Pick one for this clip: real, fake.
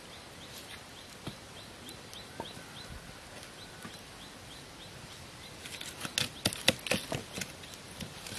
real